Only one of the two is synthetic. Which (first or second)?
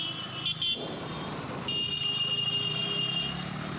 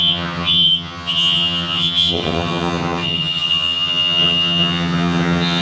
second